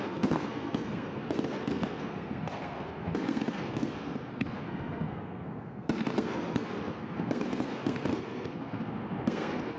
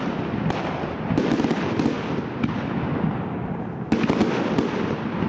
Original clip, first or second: second